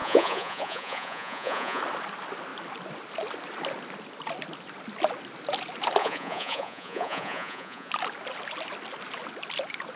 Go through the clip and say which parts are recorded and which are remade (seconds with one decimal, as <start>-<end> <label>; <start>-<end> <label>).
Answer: 0.0-1.8 remade; 1.8-6.0 recorded; 6.0-7.9 remade; 7.9-10.0 recorded